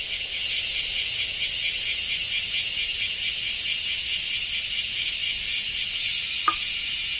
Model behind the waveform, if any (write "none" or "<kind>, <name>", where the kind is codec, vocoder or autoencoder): none